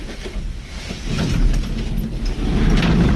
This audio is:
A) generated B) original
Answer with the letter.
B